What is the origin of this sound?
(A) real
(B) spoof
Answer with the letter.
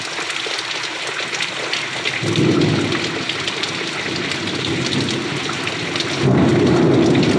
A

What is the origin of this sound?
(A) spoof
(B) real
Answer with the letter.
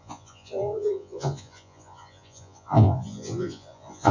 A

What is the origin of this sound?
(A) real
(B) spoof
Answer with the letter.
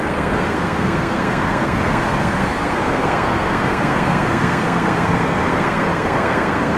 B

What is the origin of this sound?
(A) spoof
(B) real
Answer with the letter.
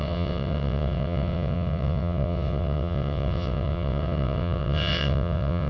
A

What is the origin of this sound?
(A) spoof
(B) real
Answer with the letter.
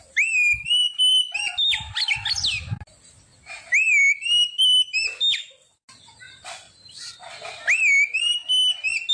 B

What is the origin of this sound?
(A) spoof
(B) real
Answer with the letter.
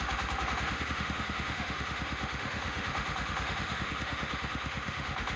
A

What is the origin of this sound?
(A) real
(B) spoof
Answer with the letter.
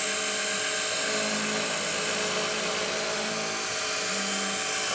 A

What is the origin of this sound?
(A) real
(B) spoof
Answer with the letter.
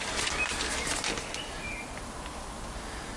A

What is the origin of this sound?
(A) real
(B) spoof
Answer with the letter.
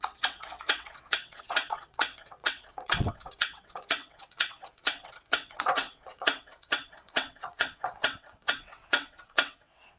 B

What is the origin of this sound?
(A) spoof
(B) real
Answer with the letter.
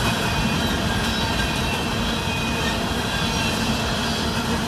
B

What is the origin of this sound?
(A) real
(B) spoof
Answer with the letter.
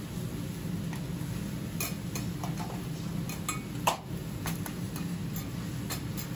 A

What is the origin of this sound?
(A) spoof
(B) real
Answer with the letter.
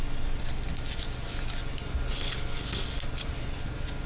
B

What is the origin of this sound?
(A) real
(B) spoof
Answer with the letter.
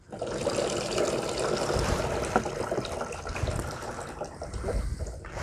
A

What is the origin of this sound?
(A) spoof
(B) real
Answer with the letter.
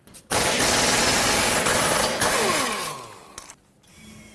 B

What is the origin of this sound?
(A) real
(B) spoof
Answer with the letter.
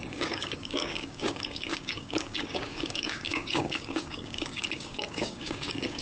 B